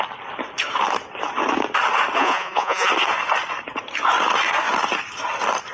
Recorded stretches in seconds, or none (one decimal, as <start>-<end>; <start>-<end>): 0.0-2.2; 2.9-5.7